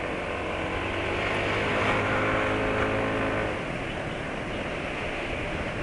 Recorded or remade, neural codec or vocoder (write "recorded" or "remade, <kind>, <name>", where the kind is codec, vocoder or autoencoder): recorded